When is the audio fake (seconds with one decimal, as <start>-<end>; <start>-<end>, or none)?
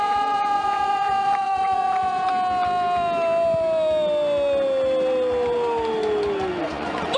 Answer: 0.0-2.3; 6.6-7.2